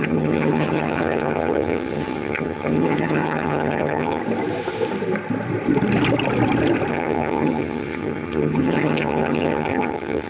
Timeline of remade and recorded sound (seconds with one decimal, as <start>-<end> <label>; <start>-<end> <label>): 0.0-4.2 remade; 4.2-6.9 recorded; 6.9-10.3 remade